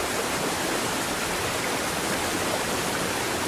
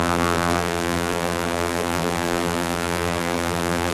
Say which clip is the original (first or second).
first